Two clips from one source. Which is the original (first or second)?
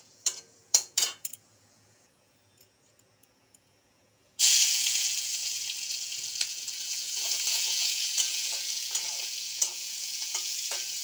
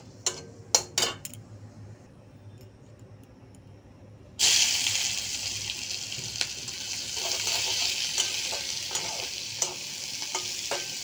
second